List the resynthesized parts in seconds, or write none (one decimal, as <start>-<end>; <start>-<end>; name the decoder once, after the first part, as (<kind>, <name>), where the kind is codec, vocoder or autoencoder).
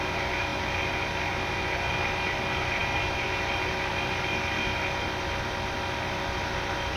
none